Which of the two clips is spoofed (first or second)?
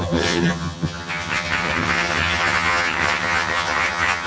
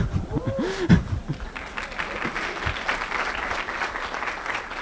first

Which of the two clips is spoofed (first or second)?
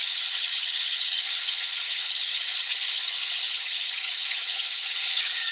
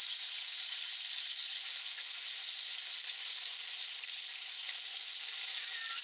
first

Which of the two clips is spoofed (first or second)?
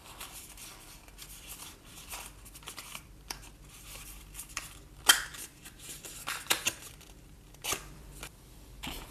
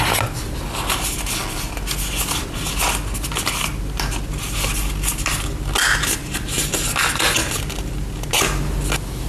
first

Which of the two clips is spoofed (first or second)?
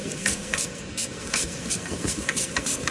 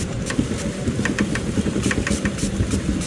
first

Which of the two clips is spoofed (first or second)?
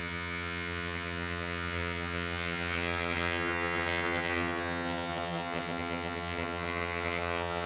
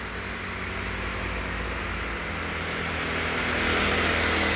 first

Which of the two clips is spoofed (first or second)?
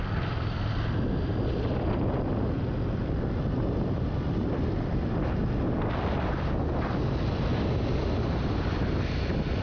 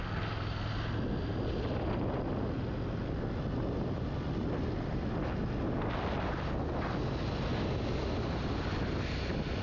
first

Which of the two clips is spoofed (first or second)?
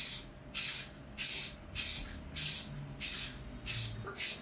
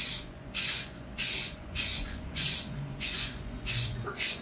second